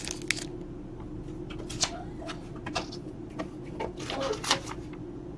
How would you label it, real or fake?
real